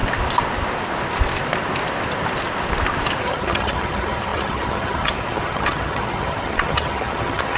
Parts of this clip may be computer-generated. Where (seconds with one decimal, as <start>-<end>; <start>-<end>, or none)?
3.2-7.6